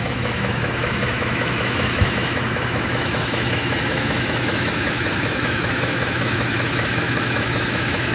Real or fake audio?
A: fake